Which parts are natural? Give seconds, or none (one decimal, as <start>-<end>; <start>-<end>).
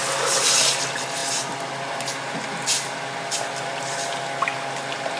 0.0-5.2